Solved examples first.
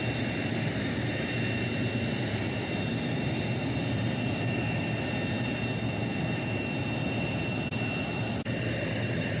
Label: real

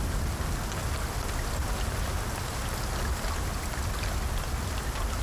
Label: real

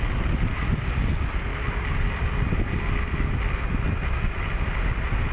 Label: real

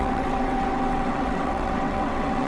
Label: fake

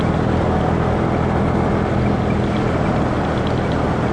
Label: real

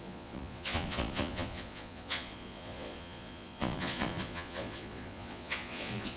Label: fake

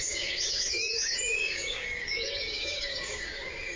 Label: fake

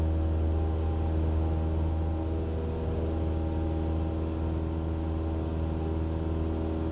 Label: real